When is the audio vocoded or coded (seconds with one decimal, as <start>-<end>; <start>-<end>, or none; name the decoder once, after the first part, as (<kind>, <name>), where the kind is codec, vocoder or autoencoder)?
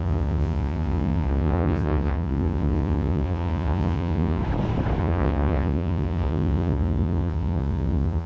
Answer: 0.0-4.4 (vocoder, Vocos); 5.0-8.3